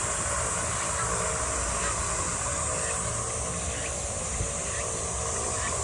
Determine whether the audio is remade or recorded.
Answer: recorded